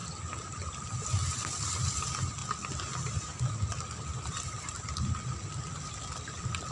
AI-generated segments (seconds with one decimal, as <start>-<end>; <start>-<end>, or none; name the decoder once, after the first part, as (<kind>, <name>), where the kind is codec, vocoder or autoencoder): none